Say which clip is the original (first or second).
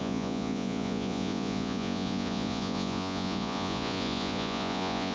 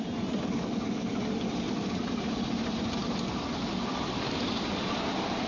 second